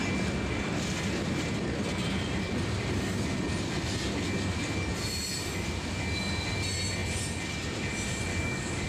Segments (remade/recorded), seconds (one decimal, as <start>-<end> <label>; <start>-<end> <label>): 0.0-8.3 recorded; 8.3-8.9 remade